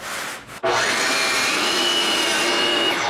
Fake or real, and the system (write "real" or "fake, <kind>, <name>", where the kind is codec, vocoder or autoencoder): real